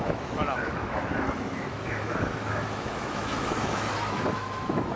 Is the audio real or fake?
fake